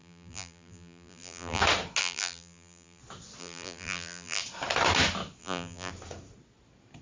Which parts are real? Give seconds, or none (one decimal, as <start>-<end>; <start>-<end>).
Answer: 1.6-2.0; 3.0-3.4; 4.4-5.4; 5.9-7.0